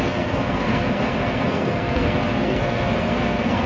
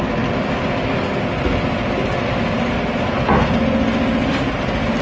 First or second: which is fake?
first